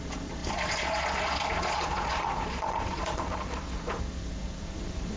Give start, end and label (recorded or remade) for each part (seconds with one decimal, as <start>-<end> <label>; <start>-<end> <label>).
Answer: 0.0-5.2 remade